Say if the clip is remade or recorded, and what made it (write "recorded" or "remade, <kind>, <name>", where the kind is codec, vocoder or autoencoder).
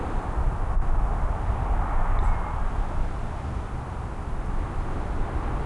recorded